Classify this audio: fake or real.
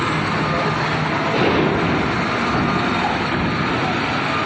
real